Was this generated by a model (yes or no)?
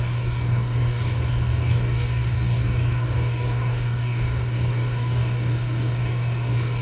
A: yes